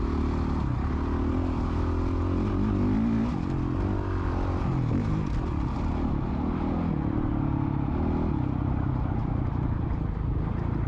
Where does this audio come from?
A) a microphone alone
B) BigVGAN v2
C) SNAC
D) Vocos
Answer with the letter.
A